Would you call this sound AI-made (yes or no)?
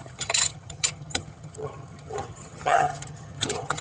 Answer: yes